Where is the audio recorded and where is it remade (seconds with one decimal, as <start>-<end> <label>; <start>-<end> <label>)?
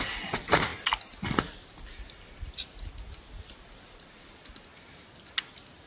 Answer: 0.0-5.9 recorded